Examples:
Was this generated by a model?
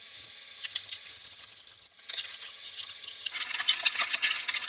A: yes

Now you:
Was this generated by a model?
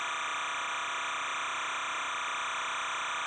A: no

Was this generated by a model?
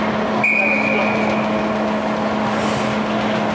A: no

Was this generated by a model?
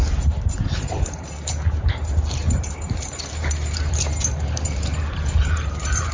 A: yes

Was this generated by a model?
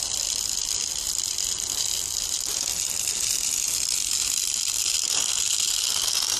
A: no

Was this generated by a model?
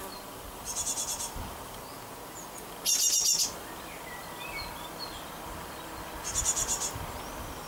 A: no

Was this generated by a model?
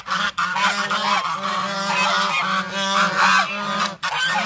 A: no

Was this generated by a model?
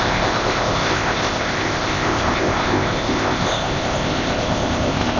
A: yes